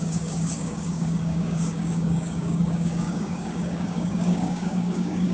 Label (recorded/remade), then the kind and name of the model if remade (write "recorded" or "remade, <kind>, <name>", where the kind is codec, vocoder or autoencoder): remade, codec, DAC